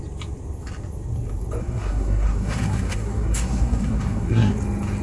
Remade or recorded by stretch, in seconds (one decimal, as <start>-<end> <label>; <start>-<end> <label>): 0.0-1.6 recorded; 1.6-4.6 remade; 4.6-5.0 recorded